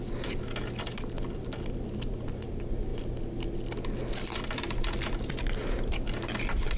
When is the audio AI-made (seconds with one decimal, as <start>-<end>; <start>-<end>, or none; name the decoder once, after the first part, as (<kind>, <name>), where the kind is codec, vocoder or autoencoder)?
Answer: none